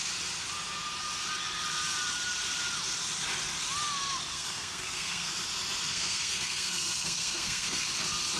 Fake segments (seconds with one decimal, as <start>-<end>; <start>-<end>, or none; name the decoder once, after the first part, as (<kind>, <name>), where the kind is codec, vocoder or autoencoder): 4.3-5.3 (codec, SNAC); 5.9-7.8